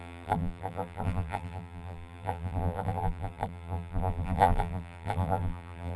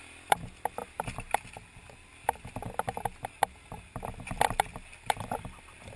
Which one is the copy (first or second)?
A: first